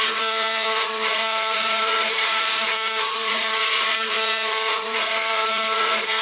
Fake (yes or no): yes